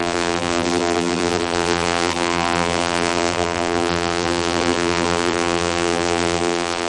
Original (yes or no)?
no